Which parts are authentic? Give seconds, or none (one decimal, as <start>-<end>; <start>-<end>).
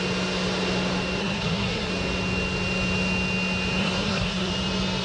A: 0.0-1.2; 1.9-3.8; 4.5-5.0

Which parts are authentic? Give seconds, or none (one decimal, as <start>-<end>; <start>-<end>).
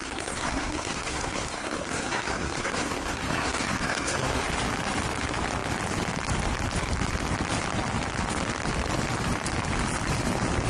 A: 4.4-10.7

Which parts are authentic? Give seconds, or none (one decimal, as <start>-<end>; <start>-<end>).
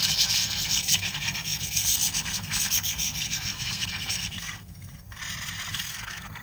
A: 5.2-5.7